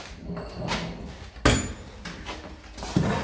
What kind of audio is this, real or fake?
real